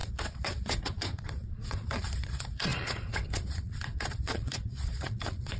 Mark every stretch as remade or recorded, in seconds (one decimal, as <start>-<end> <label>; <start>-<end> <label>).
0.0-5.6 remade